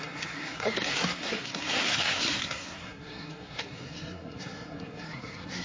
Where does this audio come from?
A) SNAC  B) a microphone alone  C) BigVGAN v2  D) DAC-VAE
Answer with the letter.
A